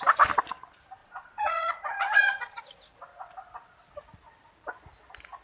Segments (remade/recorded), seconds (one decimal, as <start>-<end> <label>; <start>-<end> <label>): 0.0-1.0 recorded; 1.0-2.6 remade; 2.6-5.4 recorded